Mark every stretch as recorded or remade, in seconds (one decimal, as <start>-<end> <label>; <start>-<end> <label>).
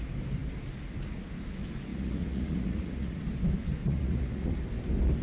0.0-1.9 recorded; 1.9-3.2 remade; 3.2-3.8 recorded; 3.8-4.5 remade; 4.5-5.2 recorded